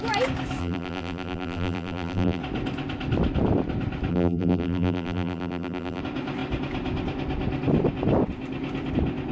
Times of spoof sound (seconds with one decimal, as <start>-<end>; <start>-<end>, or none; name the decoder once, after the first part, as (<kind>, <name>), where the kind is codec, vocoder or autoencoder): 0.6-2.4 (vocoder, BigVGAN v2); 4.1-6.0